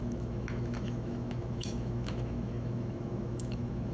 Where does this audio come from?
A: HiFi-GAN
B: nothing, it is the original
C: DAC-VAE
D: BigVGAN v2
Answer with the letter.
C